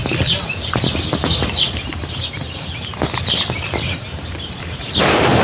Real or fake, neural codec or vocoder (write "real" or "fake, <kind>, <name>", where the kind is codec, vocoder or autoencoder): real